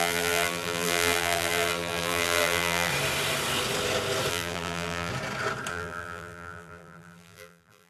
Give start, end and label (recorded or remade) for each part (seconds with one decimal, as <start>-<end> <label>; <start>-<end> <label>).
0.0-2.9 remade; 2.9-4.3 recorded; 4.3-5.1 remade; 5.1-5.7 recorded; 5.7-7.9 remade